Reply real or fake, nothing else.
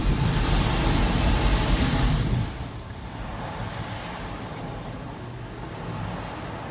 real